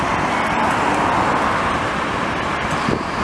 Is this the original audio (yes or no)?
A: yes